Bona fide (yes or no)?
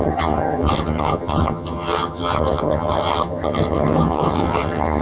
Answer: no